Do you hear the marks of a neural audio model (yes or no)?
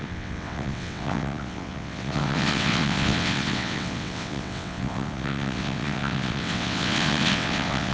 yes